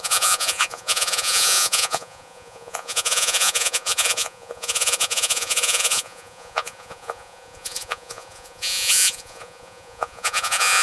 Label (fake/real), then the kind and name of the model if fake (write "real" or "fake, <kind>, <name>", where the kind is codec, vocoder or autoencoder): fake, vocoder, Vocos